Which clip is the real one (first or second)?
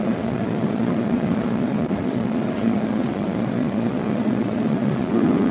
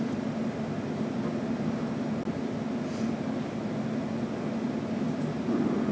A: second